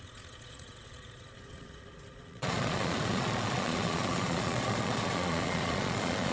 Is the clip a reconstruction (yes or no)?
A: yes